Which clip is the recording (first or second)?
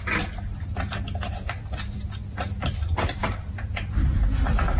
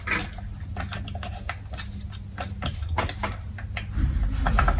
second